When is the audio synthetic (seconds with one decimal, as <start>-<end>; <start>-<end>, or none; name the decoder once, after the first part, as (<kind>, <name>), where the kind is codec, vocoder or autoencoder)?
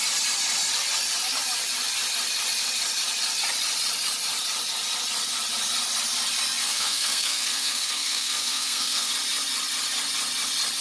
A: 6.6-9.1 (codec, SNAC)